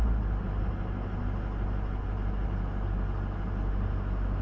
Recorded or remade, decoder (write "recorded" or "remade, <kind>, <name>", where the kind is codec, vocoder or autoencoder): recorded